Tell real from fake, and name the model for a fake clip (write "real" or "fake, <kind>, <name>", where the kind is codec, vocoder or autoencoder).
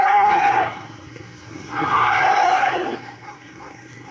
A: fake, codec, SNAC